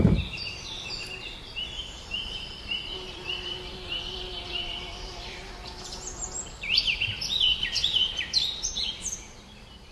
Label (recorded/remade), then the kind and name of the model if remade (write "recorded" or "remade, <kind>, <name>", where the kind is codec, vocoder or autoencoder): remade, vocoder, BigVGAN v2